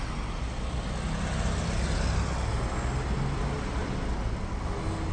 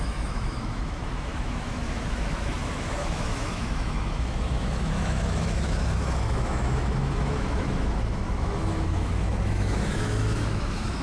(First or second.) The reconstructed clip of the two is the second